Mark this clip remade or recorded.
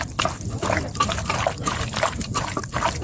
recorded